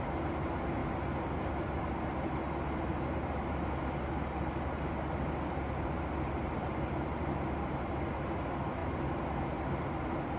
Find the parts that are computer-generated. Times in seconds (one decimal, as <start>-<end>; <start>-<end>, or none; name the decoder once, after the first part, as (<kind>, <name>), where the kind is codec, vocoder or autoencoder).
none